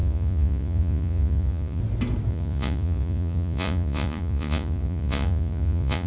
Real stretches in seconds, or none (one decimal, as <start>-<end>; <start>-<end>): 1.8-2.3